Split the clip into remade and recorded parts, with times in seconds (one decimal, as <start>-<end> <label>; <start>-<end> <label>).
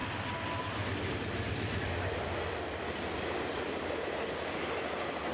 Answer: 0.0-5.3 recorded